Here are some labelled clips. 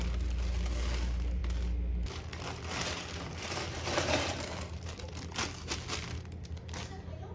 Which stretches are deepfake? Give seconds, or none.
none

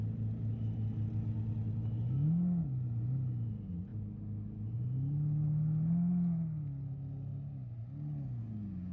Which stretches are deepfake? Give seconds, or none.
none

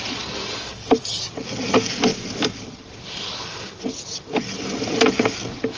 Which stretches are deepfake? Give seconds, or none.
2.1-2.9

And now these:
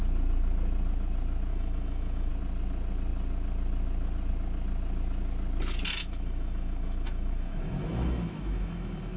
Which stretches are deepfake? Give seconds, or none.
1.5-2.3; 6.0-9.2

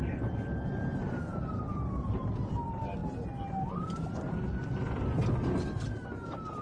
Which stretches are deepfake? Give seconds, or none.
none